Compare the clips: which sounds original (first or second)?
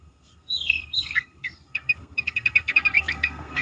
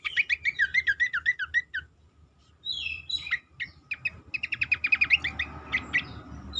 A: second